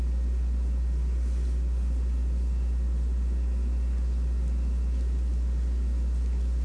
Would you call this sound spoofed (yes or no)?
no